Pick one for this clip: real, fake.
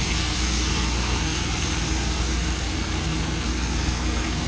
fake